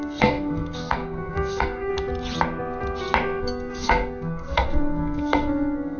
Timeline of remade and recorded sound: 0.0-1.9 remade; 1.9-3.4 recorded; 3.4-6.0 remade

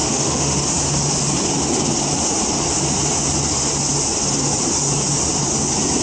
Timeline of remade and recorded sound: 0.0-0.7 remade; 0.7-6.0 recorded

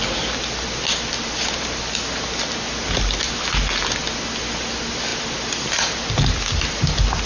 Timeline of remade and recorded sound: 0.0-7.3 recorded

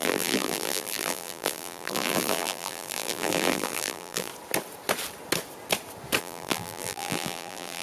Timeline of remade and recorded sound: 0.0-4.3 remade; 4.3-6.2 recorded; 6.2-7.8 remade

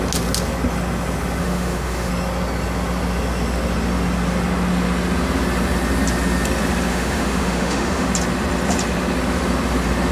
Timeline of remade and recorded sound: 0.0-1.4 recorded; 1.4-2.1 remade; 2.1-6.9 recorded; 6.9-8.1 remade; 8.1-10.1 recorded

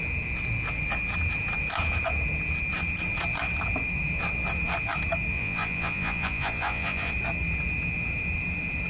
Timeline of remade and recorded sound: 0.0-5.3 recorded; 5.3-7.1 remade; 7.1-8.9 recorded

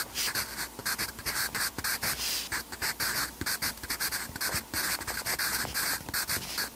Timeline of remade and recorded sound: 0.0-6.8 recorded

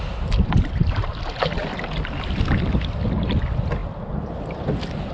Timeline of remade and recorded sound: 0.0-5.1 recorded